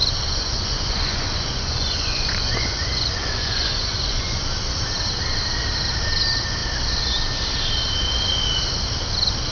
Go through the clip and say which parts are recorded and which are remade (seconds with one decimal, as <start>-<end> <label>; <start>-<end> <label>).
0.0-4.4 remade; 4.4-9.5 recorded